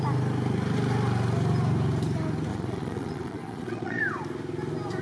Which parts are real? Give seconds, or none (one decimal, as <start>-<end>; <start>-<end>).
0.0-2.5; 4.0-5.0